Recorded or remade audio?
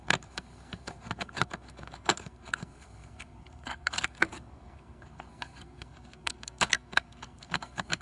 remade